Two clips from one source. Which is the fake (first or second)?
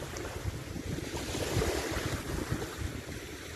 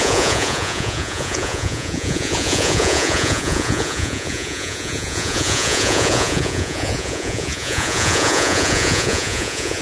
second